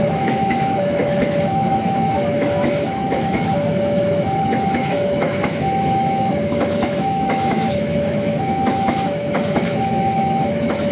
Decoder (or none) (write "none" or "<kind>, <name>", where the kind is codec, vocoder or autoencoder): autoencoder, DAC-VAE